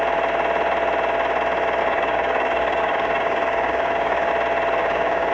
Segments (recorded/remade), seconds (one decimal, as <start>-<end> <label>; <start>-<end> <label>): 0.0-1.8 recorded; 1.8-4.3 remade; 4.3-4.8 recorded; 4.8-5.3 remade